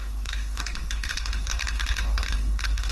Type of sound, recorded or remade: remade